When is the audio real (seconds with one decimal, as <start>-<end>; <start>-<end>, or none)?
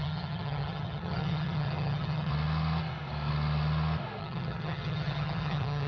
2.3-4.2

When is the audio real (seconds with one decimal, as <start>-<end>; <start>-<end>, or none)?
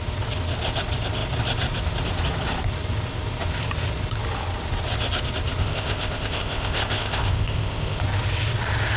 0.0-5.6; 8.0-9.0